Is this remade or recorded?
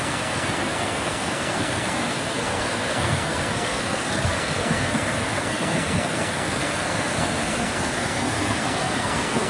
remade